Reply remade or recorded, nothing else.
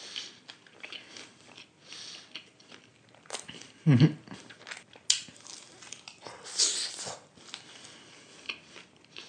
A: recorded